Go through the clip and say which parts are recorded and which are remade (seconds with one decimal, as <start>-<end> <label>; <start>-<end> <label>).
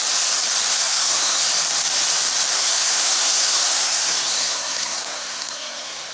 0.0-0.7 recorded; 0.7-1.5 remade; 1.5-2.5 recorded; 2.5-6.1 remade